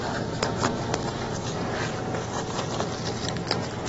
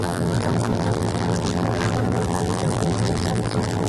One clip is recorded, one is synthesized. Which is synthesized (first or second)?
second